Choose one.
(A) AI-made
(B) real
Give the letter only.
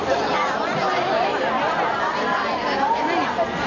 B